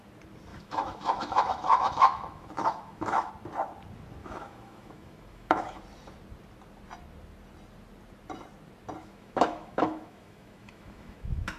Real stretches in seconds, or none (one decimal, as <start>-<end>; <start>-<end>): 0.0-0.5; 3.3-4.2; 5.8-9.0